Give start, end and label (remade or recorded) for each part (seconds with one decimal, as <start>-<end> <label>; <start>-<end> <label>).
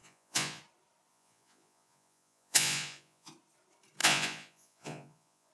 0.0-0.6 remade; 0.6-1.1 recorded; 1.1-3.3 remade; 3.3-4.0 recorded; 4.0-5.5 remade